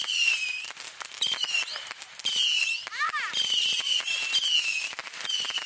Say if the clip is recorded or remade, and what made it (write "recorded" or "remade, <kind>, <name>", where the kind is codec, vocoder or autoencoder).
recorded